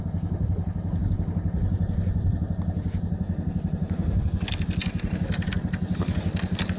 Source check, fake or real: real